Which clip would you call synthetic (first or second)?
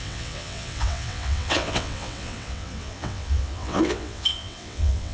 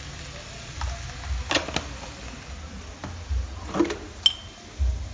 first